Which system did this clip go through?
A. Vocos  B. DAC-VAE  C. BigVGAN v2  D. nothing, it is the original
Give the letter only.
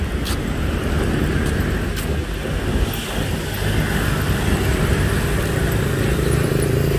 D